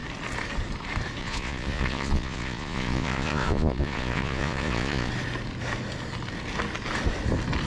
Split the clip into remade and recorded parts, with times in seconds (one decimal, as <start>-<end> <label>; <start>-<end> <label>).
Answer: 0.0-1.2 recorded; 1.2-5.1 remade; 5.1-7.7 recorded